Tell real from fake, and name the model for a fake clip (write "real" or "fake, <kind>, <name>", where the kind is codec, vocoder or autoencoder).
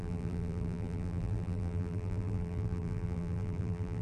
fake, vocoder, BigVGAN v2